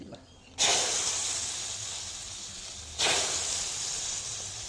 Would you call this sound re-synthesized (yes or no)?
no